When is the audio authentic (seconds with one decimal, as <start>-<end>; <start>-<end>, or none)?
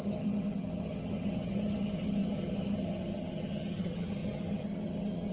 none